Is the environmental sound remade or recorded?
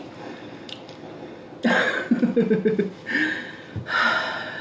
recorded